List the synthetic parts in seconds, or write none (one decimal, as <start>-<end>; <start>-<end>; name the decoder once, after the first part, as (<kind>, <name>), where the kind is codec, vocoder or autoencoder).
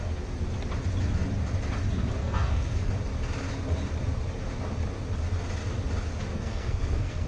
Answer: 2.2-2.9 (codec, SNAC); 6.3-7.3